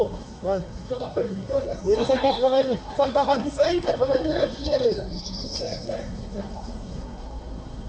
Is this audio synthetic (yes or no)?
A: yes